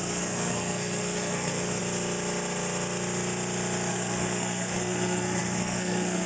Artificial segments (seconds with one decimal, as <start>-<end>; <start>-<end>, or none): 0.0-1.8; 3.9-6.3